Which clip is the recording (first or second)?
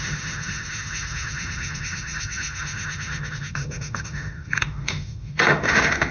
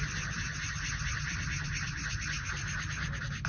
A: second